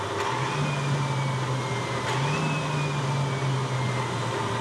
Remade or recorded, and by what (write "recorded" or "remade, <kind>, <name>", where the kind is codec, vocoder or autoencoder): recorded